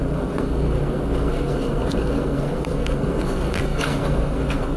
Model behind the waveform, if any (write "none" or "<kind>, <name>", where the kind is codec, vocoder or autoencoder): codec, SNAC